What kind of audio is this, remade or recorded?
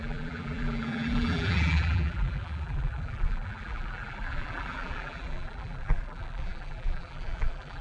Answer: remade